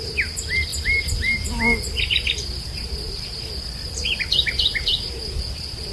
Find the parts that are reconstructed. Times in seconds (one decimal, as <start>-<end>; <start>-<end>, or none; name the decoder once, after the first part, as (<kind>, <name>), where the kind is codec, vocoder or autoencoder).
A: none

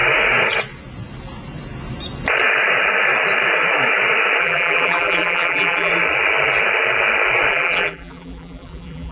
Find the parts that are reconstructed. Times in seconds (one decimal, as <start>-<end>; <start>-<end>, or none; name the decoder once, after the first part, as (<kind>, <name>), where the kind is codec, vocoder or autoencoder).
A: 4.4-5.9 (vocoder, BigVGAN v2); 7.5-9.1

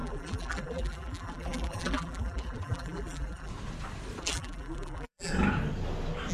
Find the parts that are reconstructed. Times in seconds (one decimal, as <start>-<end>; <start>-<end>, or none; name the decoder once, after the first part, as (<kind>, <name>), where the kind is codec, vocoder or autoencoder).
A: 0.0-3.5 (vocoder, BigVGAN v2); 4.2-5.3

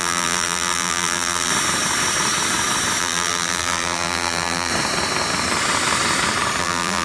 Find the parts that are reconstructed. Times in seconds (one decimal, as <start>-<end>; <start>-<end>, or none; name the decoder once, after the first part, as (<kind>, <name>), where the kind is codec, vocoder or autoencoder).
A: 0.0-1.5 (vocoder, BigVGAN v2); 3.0-4.7; 6.6-7.0

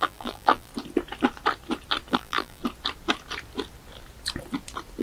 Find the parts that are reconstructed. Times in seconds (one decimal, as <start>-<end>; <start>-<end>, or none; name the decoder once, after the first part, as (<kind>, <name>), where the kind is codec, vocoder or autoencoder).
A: 0.0-0.7 (vocoder, BigVGAN v2); 2.1-2.6